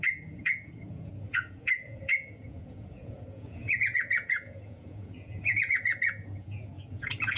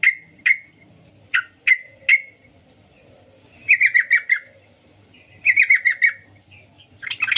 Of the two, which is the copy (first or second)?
first